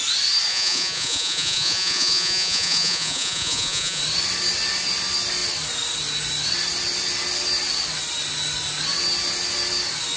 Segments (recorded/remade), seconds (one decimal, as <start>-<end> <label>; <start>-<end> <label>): 0.0-0.5 recorded; 0.5-4.0 remade; 4.0-10.2 recorded